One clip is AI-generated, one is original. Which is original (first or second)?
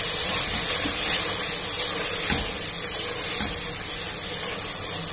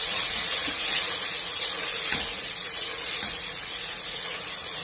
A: first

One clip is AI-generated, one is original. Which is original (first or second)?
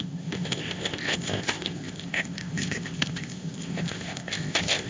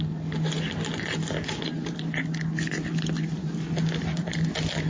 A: second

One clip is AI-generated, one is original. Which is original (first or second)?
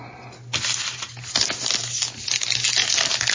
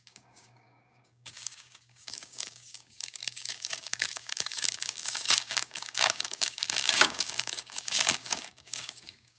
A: first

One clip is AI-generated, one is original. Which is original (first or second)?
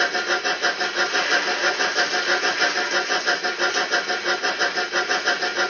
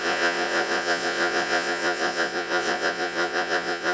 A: first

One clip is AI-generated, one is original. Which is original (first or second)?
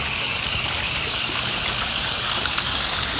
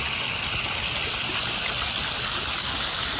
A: second